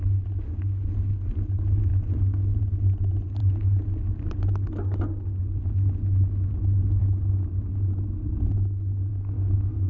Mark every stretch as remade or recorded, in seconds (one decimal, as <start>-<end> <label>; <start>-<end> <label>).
0.0-9.1 recorded; 9.1-9.9 remade